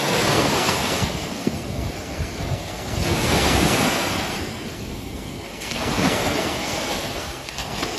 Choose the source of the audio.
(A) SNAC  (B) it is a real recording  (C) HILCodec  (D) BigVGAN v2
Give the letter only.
A